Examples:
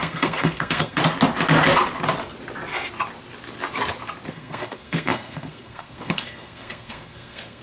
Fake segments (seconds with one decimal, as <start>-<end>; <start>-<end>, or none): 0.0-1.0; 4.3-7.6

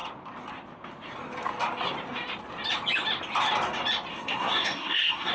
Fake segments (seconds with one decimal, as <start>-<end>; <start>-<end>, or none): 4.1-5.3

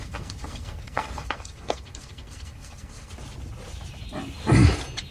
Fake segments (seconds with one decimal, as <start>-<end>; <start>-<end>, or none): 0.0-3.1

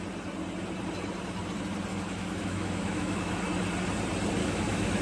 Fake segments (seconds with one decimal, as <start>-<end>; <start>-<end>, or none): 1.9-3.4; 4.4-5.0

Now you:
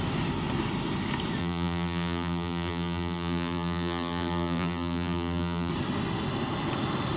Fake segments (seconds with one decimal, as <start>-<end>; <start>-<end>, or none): 1.4-5.7

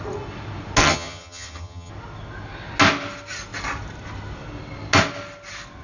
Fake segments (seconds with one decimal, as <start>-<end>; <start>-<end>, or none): 0.8-1.9

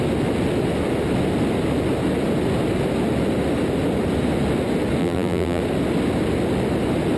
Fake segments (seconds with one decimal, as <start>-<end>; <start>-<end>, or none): 5.0-5.6

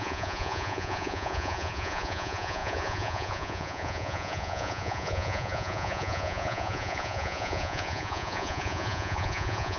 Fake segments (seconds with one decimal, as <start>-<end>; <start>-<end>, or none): 0.0-9.8